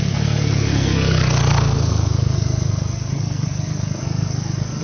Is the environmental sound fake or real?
fake